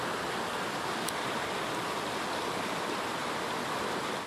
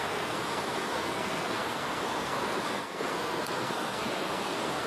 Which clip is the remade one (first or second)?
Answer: second